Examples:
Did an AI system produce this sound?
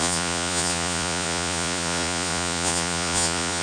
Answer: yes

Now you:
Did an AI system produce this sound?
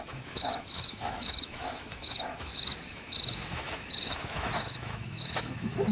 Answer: yes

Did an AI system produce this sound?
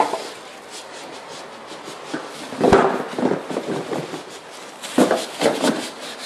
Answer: no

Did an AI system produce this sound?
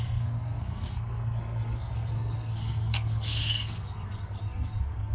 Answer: yes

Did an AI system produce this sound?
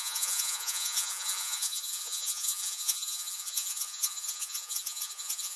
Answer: yes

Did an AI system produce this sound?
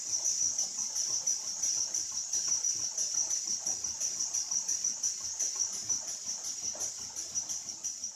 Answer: yes